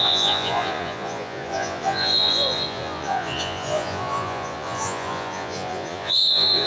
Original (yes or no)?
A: no